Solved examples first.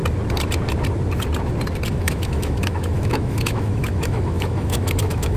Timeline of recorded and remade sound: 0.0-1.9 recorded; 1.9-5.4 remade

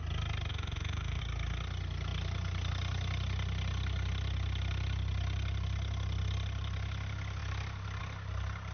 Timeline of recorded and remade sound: 0.0-0.5 recorded; 0.5-1.2 remade; 1.2-8.7 recorded

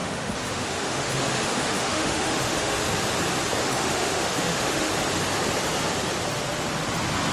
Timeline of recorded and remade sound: 0.0-2.8 remade; 2.8-3.6 recorded; 3.6-4.9 remade; 4.9-7.3 recorded

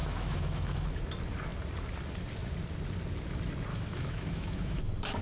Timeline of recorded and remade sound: 0.0-1.0 remade; 1.0-3.7 recorded; 3.7-4.8 remade; 4.8-5.2 recorded

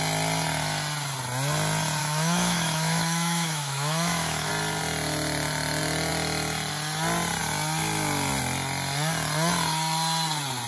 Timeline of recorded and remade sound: 0.0-2.0 recorded; 2.0-4.5 remade; 4.5-10.7 recorded

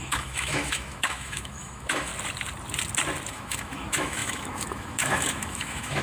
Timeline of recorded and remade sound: 0.0-2.1 remade; 2.1-3.3 recorded; 3.3-6.0 remade